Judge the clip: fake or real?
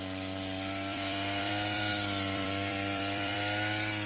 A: fake